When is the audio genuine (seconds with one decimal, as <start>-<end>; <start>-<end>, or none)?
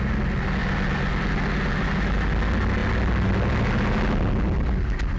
0.0-5.2